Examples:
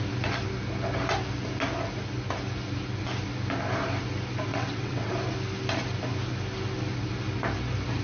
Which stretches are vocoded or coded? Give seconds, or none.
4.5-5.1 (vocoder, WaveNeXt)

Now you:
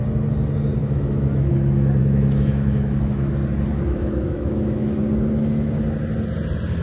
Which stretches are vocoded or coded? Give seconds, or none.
0.8-1.5 (autoencoder, DAC-VAE); 2.0-3.3; 3.7-5.0

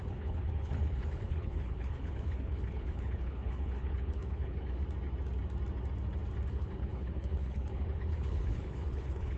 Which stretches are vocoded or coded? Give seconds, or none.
0.0-4.8 (codec, HILCodec); 6.5-9.4

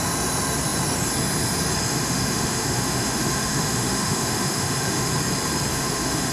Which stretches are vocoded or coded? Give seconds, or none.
1.9-5.1 (autoencoder, DAC-VAE); 5.7-6.3

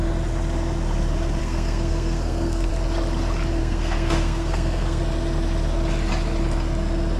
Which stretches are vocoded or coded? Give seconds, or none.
1.4-2.7 (codec, SNAC); 3.6-5.0

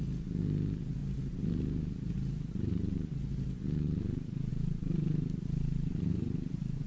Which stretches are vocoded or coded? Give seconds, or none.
1.0-3.1 (vocoder, BigVGAN v2); 4.5-6.9

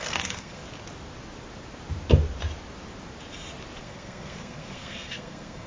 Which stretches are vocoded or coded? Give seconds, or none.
0.0-0.6 (codec, SNAC); 3.8-5.7